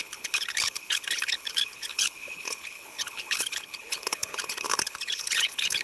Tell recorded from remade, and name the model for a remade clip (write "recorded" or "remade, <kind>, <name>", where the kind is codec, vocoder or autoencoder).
remade, codec, HILCodec